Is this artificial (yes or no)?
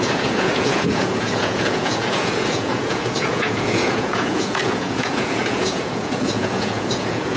yes